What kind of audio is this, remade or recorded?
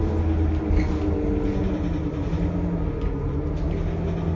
recorded